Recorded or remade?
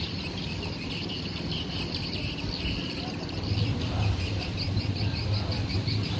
remade